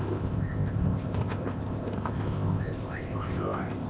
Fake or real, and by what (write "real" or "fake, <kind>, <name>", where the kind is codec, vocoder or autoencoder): fake, codec, ZipCodec